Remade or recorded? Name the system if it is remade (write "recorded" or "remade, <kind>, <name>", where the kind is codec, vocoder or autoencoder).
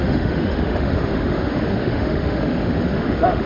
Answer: remade, autoencoder, DAC-VAE